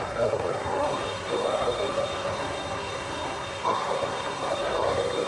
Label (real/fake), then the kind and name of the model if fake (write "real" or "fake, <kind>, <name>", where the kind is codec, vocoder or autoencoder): fake, codec, SNAC